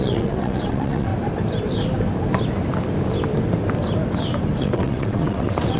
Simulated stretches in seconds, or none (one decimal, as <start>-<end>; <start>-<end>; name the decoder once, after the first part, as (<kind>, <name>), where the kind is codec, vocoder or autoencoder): 0.0-1.1 (vocoder, WaveNeXt); 4.6-5.8